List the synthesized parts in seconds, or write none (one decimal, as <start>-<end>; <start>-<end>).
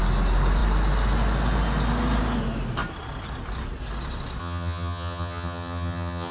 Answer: 4.4-6.3